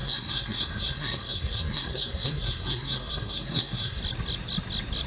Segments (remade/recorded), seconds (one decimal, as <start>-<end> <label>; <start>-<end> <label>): 0.0-4.0 remade; 4.0-5.1 recorded